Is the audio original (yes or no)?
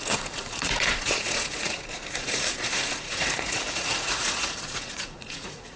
no